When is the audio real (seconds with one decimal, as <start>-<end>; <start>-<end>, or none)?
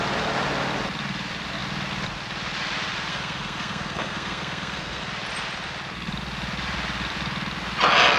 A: 0.0-3.1; 5.1-8.2